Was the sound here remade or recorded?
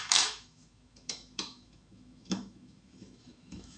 remade